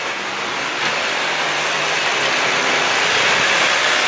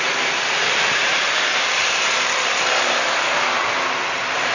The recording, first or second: first